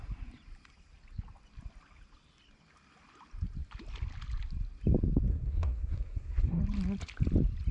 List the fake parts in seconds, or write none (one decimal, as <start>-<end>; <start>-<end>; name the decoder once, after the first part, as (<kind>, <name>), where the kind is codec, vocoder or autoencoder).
5.3-6.6 (codec, SNAC)